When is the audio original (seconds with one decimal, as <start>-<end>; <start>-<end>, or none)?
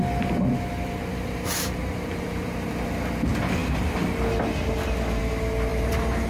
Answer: 0.0-1.1; 2.7-5.7